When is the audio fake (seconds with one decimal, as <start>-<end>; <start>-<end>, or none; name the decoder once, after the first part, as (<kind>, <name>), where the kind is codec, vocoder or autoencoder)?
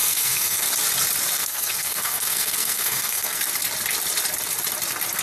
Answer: 0.0-0.7 (codec, SNAC); 1.3-3.4